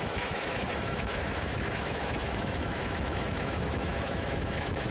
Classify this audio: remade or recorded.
remade